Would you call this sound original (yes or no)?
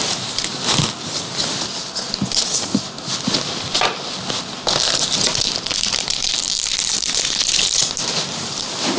yes